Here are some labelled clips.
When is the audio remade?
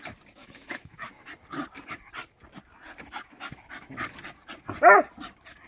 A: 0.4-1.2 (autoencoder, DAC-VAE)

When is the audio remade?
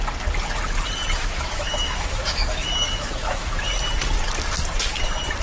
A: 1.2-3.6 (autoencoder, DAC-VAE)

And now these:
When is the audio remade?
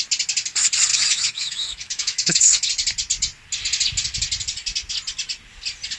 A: 0.9-2.7 (autoencoder, DAC-VAE)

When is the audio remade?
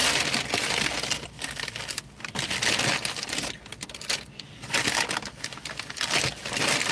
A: none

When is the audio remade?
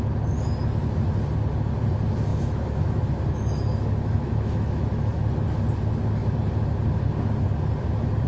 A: 2.3-5.3 (autoencoder, DAC-VAE)